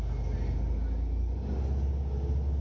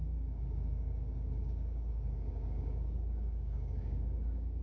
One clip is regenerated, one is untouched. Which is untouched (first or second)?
first